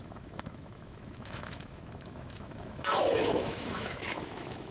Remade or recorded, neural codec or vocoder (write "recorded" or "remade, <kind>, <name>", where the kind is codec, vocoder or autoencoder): remade, autoencoder, DAC-VAE